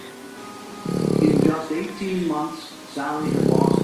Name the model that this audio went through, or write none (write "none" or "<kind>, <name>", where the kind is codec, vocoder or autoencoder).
none